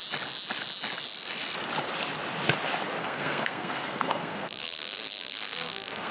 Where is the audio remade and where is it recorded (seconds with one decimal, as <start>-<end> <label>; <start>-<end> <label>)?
0.0-3.0 recorded; 3.0-6.1 remade